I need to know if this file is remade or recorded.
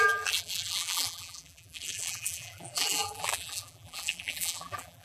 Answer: remade